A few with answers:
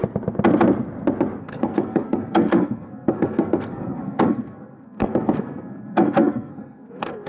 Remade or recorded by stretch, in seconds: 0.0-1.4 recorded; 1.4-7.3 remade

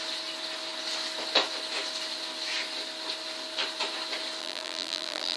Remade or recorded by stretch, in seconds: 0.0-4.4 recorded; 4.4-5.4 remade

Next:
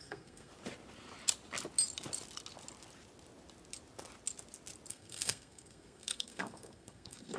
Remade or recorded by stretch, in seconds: 0.0-0.5 remade; 0.5-4.9 recorded; 4.9-7.4 remade